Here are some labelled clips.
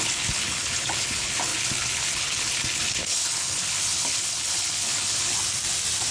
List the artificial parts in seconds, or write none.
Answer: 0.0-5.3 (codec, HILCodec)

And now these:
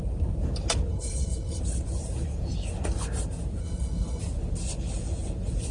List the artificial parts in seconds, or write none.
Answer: 0.9-1.6 (codec, HILCodec); 3.6-4.2

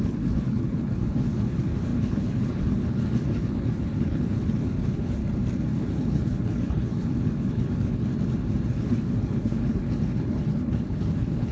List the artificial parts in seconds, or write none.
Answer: 0.0-5.2 (codec, HILCodec); 5.7-8.1; 8.7-11.5

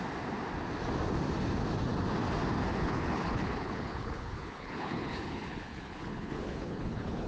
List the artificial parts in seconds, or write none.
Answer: 2.7-7.3 (codec, HILCodec)